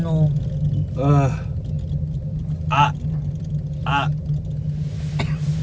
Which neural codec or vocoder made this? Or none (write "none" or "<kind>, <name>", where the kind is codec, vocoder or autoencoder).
none